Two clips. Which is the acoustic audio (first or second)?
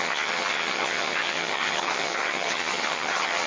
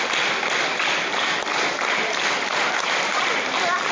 second